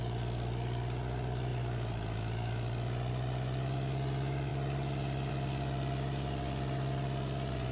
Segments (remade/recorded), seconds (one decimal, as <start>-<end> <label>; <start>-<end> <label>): 0.0-7.7 recorded